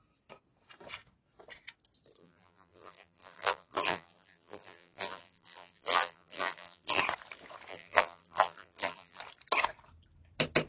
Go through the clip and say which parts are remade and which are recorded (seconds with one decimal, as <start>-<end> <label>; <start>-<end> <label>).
0.0-2.2 recorded; 2.2-7.0 remade; 7.0-7.7 recorded; 7.7-9.2 remade; 9.2-10.7 recorded